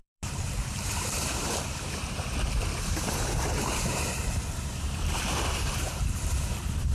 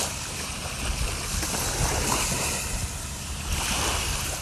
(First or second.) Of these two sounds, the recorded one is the second